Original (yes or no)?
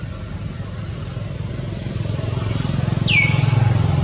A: yes